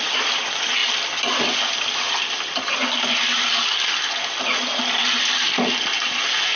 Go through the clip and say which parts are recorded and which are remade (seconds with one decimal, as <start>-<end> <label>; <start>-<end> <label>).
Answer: 0.0-6.6 recorded